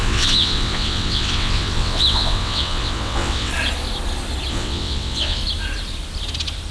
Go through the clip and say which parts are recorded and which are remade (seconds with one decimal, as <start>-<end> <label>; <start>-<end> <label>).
0.0-3.5 remade; 3.5-4.5 recorded; 4.5-5.4 remade; 5.4-6.7 recorded